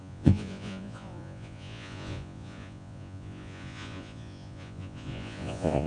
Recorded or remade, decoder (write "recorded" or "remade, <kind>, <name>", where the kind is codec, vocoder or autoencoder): remade, vocoder, Vocos